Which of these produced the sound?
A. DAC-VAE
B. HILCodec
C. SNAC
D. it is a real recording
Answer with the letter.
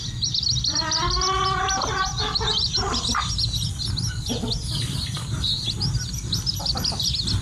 D